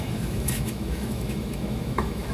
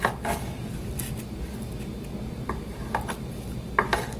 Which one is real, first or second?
second